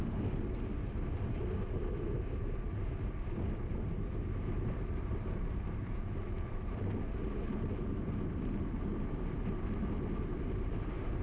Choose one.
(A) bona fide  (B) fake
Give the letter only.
A